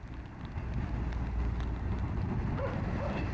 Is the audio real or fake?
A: real